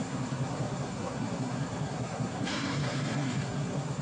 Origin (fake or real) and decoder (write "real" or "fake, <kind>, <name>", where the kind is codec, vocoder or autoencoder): fake, codec, SNAC